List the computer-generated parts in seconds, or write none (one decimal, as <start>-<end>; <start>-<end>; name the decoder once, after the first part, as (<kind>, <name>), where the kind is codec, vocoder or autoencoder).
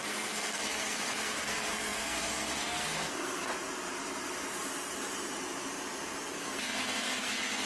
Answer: 0.0-3.5 (codec, SNAC); 6.3-7.7